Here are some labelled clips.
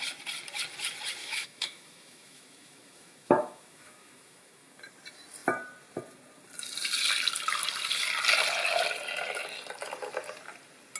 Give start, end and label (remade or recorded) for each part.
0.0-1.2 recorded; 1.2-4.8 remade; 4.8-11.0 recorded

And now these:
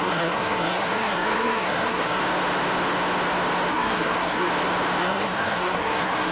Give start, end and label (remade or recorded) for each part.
0.0-2.2 remade; 2.2-3.7 recorded; 3.7-4.5 remade; 4.5-5.0 recorded; 5.0-6.3 remade

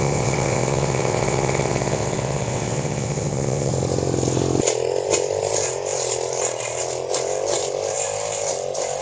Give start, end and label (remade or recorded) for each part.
0.0-3.7 remade; 3.7-9.0 recorded